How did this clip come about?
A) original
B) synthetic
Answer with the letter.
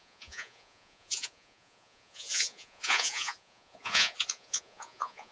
B